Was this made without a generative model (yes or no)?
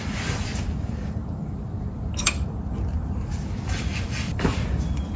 no